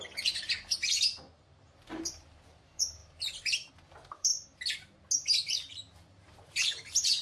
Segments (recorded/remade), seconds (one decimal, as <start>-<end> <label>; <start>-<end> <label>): 0.0-3.0 remade; 3.0-3.7 recorded; 3.7-4.3 remade; 4.3-5.7 recorded; 5.7-7.2 remade